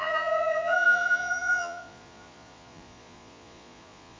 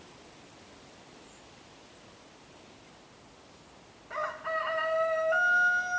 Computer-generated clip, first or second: first